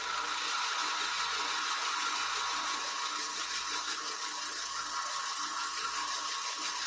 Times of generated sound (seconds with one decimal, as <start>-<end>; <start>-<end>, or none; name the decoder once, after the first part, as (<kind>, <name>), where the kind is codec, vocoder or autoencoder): 0.8-2.9 (vocoder, Vocos)